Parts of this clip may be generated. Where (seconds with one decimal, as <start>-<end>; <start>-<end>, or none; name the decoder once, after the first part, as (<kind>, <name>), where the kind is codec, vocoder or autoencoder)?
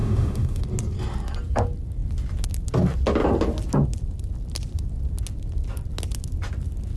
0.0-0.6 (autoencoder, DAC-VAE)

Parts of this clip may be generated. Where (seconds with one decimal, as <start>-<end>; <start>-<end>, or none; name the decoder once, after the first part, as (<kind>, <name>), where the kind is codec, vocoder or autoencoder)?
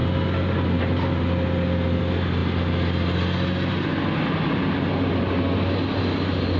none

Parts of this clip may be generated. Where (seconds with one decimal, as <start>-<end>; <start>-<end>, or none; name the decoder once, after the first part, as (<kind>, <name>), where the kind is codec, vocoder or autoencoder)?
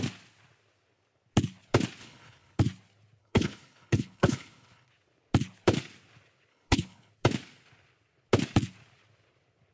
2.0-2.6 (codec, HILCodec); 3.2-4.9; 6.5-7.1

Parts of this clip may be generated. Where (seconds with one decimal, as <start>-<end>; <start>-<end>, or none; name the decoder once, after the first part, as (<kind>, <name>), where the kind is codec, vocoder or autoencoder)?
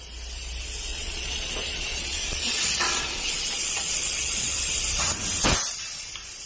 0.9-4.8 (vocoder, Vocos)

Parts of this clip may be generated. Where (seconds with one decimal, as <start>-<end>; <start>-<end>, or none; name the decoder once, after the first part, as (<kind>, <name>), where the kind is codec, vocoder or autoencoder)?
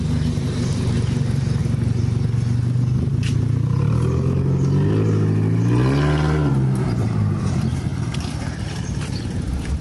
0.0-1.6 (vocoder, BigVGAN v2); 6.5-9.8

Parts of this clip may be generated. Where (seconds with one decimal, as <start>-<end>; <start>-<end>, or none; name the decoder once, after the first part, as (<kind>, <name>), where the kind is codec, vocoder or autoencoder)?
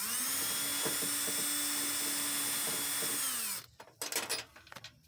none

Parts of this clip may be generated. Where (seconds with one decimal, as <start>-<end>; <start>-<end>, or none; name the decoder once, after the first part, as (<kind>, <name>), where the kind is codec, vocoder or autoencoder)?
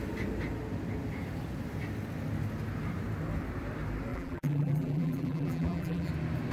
4.1-6.1 (vocoder, BigVGAN v2)